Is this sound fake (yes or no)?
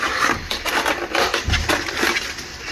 no